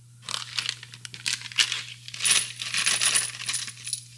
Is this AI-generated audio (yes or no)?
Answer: no